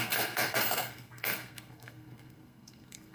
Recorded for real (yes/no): no